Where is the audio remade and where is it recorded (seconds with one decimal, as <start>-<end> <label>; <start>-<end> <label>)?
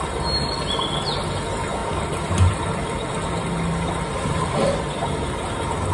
0.0-1.8 recorded; 1.8-5.3 remade; 5.3-5.9 recorded